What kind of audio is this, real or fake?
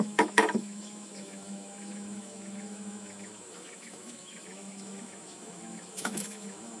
fake